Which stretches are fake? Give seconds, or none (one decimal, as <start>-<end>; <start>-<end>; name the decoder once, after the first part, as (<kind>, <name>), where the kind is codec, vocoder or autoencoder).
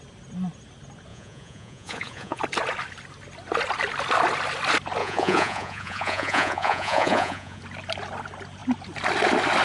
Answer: 1.1-2.4 (vocoder, Vocos); 5.0-7.6